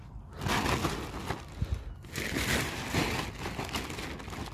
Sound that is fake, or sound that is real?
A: real